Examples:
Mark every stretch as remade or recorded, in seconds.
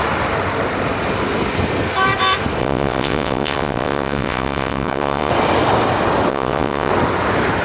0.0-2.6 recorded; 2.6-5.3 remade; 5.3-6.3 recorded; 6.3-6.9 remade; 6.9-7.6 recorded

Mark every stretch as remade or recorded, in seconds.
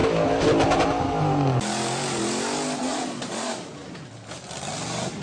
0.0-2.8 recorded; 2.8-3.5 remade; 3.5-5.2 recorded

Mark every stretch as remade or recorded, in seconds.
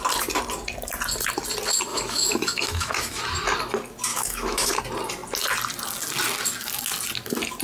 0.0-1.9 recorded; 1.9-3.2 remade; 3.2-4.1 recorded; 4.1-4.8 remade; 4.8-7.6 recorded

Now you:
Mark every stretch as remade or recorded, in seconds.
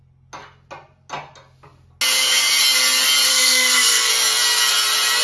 0.0-3.3 recorded; 3.3-4.1 remade; 4.1-5.2 recorded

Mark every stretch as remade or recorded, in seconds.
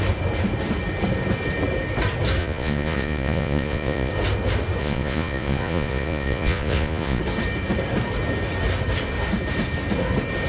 0.0-2.4 recorded; 2.4-4.1 remade; 4.1-4.8 recorded; 4.8-7.2 remade; 7.2-10.5 recorded